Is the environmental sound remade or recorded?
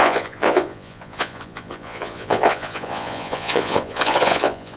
remade